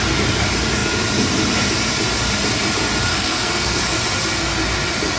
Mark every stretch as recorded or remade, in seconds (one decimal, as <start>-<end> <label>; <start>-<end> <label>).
0.0-3.1 recorded; 3.1-3.8 remade; 3.8-5.2 recorded